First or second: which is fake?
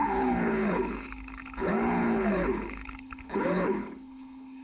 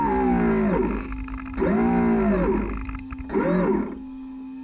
first